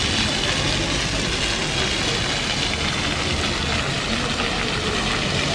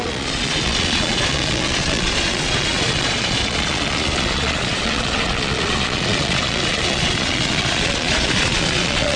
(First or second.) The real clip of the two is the first